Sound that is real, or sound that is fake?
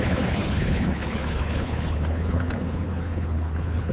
fake